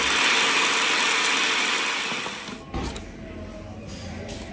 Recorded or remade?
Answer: recorded